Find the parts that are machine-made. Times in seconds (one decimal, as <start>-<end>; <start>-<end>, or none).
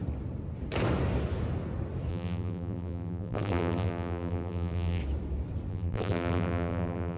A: 2.1-5.0; 5.7-7.2